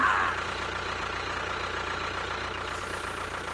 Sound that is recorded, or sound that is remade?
recorded